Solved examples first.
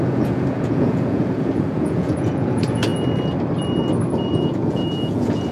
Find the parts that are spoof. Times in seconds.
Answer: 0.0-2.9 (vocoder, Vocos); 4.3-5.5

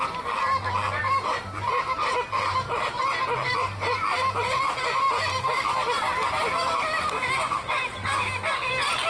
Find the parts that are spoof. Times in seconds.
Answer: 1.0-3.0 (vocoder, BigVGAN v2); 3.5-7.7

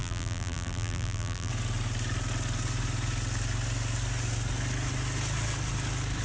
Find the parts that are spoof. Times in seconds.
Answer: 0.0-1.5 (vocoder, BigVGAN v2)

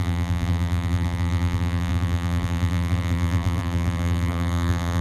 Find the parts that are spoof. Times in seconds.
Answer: 0.0-5.0 (vocoder, BigVGAN v2)